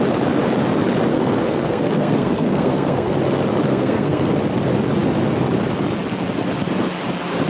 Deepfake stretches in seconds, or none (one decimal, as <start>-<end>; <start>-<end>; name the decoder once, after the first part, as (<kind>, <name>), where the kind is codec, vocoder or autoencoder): 1.1-3.1 (codec, SNAC); 3.7-4.3

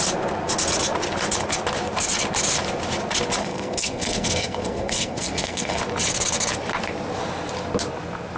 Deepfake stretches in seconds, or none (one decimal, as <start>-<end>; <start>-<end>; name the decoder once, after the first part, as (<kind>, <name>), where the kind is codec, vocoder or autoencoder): 3.4-5.8 (codec, SNAC)

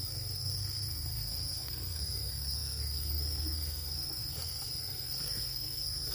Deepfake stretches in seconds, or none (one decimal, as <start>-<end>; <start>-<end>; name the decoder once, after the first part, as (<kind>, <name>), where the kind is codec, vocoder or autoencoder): 0.0-6.1 (codec, SNAC)

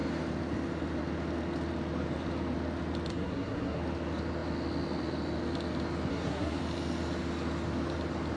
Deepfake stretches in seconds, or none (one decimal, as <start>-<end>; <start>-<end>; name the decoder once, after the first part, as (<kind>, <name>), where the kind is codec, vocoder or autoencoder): 3.1-3.8 (codec, SNAC); 6.1-6.6

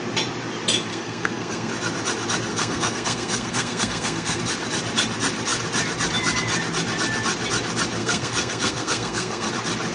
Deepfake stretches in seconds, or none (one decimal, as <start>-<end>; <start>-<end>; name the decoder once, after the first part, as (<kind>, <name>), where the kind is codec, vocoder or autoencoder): 0.9-1.7 (codec, SNAC); 2.5-4.4; 8.0-9.5

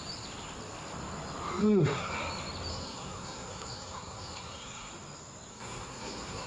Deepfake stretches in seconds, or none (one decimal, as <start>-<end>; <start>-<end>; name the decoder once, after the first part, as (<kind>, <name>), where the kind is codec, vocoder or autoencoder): 1.6-2.1 (codec, SNAC); 2.7-4.9; 5.5-6.5